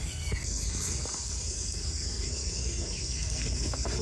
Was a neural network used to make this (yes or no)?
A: yes